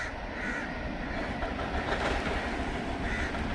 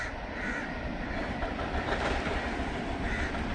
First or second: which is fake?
second